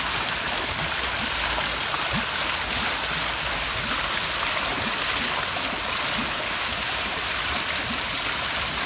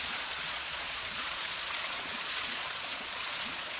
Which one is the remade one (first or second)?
second